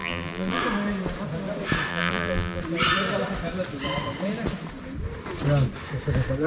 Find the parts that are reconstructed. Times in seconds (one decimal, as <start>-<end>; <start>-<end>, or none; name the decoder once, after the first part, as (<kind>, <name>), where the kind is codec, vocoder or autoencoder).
0.0-0.6 (vocoder, BigVGAN v2); 1.9-2.6